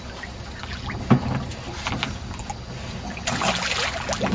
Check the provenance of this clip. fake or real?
real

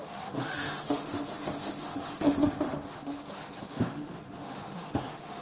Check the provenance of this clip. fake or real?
fake